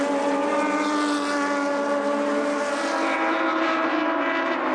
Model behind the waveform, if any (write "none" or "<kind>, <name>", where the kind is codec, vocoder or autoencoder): none